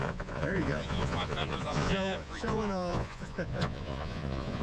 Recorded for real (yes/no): no